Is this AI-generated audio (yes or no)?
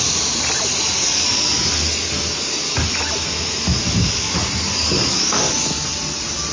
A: no